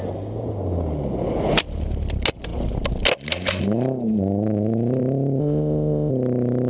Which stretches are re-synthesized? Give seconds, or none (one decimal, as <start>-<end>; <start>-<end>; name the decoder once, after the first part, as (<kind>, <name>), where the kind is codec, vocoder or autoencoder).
5.4-6.1 (codec, ZipCodec)